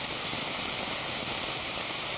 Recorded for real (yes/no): yes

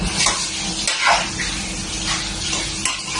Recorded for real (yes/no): yes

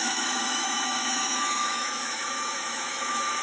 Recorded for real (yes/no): no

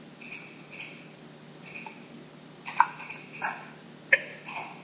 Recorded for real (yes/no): yes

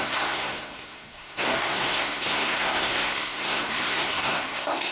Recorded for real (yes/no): no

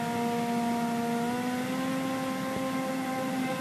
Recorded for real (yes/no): yes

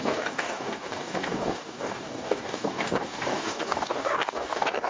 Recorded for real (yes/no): no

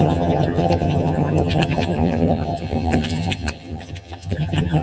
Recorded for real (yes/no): no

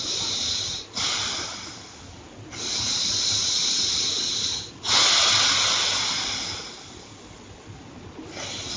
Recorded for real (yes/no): yes